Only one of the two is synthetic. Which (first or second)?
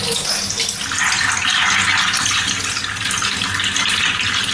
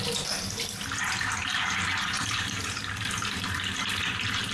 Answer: second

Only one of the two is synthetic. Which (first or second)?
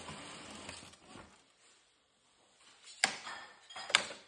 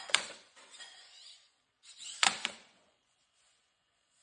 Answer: second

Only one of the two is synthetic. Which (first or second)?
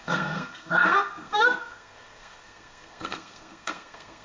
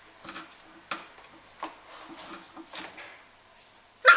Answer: first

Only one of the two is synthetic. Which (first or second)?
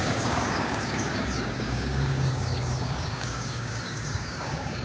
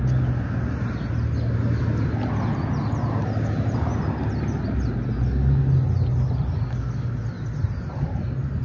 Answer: first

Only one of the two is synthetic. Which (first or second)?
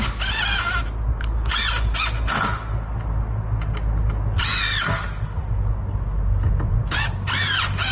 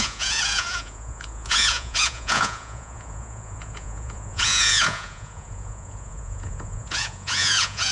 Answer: second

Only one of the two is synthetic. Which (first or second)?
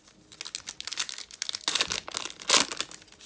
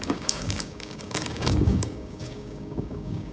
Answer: second